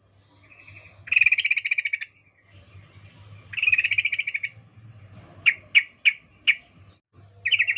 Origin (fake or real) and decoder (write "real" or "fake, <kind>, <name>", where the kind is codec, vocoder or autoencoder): real